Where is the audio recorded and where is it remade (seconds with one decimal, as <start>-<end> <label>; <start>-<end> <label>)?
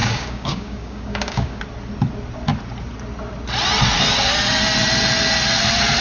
0.0-1.6 remade; 1.6-6.0 recorded